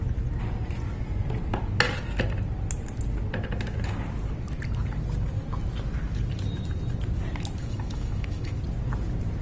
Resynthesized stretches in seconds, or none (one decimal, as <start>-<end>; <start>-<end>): 7.6-8.6